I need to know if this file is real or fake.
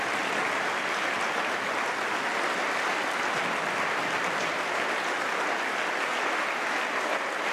real